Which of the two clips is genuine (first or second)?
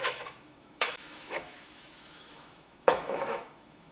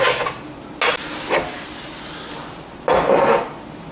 second